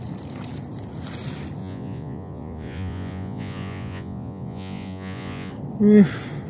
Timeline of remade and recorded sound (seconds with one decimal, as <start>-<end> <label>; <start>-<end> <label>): 0.0-1.6 recorded; 1.6-5.5 remade; 5.5-6.5 recorded